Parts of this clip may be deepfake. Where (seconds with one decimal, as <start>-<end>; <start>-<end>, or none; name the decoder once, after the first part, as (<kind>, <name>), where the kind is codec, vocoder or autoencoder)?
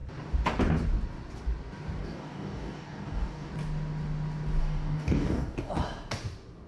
2.0-3.5 (codec, DAC); 4.6-5.7